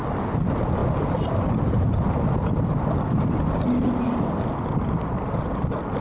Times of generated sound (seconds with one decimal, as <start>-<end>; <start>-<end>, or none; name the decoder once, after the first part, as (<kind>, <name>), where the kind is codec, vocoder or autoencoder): 0.8-2.7 (vocoder, BigVGAN v2)